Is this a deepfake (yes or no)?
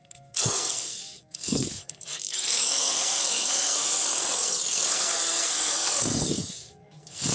yes